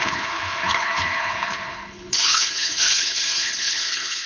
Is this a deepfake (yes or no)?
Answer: yes